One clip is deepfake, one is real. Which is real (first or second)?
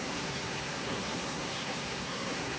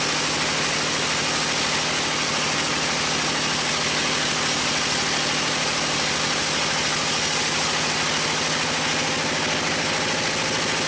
second